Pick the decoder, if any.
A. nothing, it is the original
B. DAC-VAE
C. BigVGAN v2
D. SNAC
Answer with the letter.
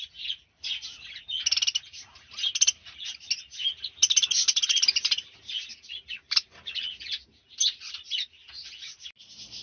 A